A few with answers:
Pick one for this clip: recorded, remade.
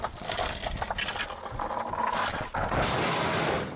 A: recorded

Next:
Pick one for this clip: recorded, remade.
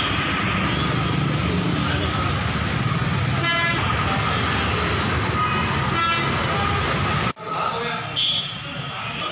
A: recorded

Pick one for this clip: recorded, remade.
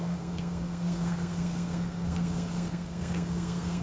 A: remade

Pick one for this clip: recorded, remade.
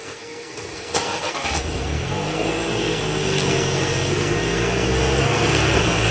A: remade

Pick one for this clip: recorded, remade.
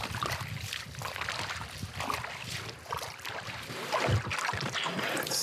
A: recorded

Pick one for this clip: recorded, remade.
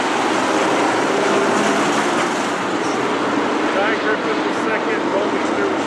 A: recorded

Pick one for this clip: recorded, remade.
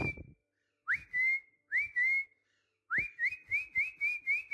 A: recorded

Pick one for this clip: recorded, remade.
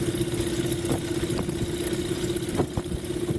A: recorded